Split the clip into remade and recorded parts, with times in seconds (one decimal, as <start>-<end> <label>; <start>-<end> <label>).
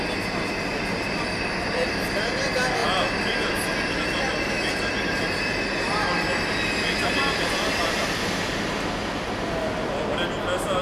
0.0-10.8 recorded